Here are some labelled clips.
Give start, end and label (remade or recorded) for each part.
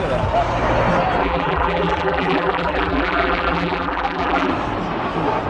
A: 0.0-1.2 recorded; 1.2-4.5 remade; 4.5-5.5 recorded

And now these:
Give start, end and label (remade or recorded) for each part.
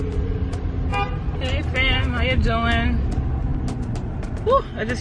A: 0.0-5.0 recorded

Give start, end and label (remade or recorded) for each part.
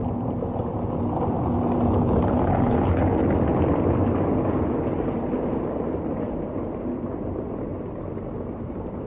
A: 0.0-2.7 recorded; 2.7-7.7 remade; 7.7-8.7 recorded; 8.7-9.1 remade